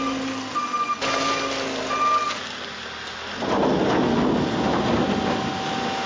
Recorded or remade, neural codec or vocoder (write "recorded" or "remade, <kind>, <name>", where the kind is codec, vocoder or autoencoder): recorded